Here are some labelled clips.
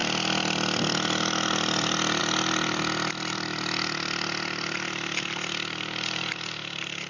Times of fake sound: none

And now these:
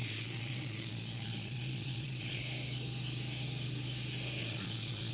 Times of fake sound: 0.0-2.4 (vocoder, Vocos); 4.4-5.1

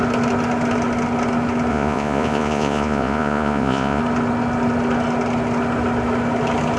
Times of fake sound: 1.7-4.0 (vocoder, Vocos)

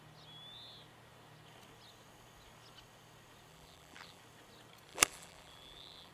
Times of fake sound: 3.5-4.2 (vocoder, BigVGAN v2); 4.9-6.1

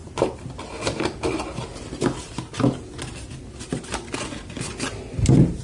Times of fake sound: none

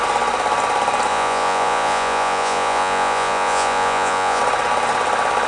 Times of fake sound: 1.1-4.4 (vocoder, Vocos)

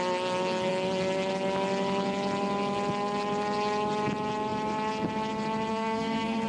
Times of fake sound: 5.7-6.5 (codec, SNAC)

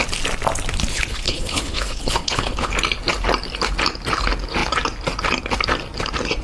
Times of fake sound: 0.9-2.7 (codec, HILCodec)